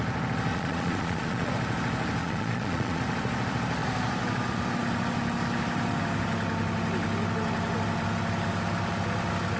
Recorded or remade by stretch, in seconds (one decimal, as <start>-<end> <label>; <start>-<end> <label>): 0.0-0.5 recorded; 0.5-1.5 remade; 1.5-2.2 recorded; 2.2-3.0 remade; 3.0-9.6 recorded